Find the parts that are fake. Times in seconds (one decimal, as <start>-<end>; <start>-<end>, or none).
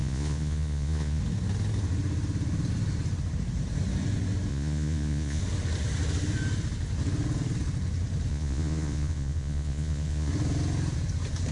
0.0-1.2; 4.5-5.4; 8.3-10.3